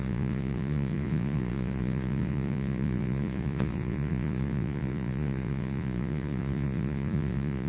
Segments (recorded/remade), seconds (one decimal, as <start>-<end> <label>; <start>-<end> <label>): 0.0-7.7 remade